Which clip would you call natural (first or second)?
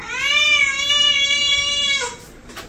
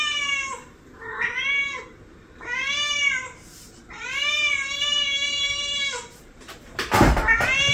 first